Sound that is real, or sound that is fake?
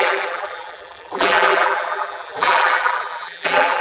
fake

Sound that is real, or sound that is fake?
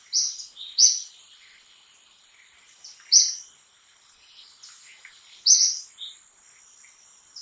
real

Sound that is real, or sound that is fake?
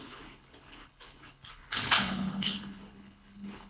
fake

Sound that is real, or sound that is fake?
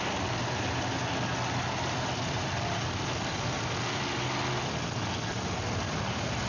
real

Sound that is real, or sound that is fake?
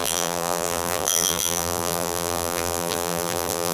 fake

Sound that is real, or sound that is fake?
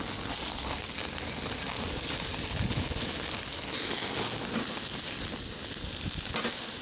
real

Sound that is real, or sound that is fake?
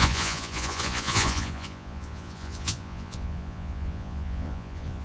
fake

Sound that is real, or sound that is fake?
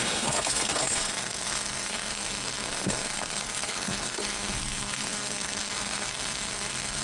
fake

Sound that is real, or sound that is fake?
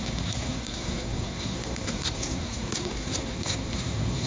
fake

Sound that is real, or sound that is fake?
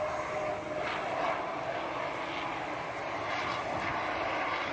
real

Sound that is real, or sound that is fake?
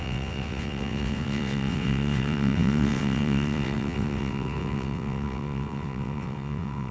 fake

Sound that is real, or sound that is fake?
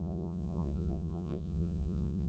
fake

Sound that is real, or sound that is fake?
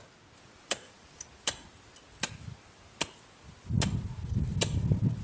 real